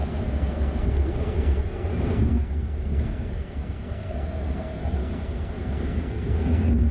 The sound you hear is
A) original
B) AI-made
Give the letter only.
B